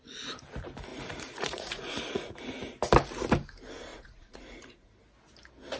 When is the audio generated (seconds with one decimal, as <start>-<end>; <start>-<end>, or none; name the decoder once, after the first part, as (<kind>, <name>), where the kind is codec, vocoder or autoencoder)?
0.9-2.3 (vocoder, Vocos); 3.9-4.9